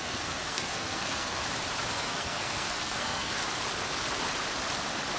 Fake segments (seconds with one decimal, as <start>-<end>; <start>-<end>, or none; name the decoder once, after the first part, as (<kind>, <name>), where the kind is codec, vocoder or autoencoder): 0.0-1.4 (codec, SNAC); 1.9-3.4

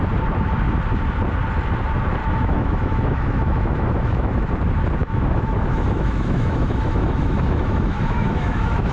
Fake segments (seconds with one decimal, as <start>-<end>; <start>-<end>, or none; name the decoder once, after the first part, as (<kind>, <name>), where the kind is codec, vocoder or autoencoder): 2.2-4.5 (autoencoder, DAC-VAE); 5.0-8.9

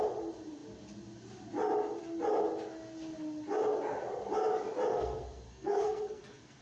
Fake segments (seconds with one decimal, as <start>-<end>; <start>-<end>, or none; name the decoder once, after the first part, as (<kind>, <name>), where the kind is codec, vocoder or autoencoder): 4.9-6.6 (codec, SNAC)

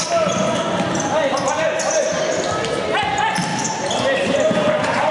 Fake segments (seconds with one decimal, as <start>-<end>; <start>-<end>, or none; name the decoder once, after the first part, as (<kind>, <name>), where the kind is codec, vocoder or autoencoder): 3.5-5.1 (vocoder, BigVGAN v2)

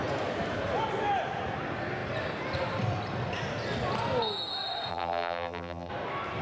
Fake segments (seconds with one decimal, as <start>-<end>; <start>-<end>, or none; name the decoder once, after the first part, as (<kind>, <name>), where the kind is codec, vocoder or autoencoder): 4.9-5.9 (vocoder, BigVGAN v2)

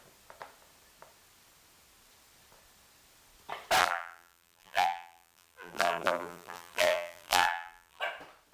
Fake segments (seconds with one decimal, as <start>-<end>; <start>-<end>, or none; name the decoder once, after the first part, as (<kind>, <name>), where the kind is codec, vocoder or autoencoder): 3.8-8.0 (vocoder, BigVGAN v2)

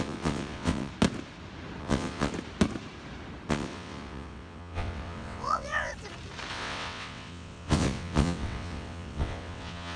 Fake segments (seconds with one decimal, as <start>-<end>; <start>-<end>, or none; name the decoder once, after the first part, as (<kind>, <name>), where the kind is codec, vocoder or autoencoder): 0.0-0.9 (vocoder, WaveNeXt); 1.8-2.3; 3.5-5.9; 6.5-10.0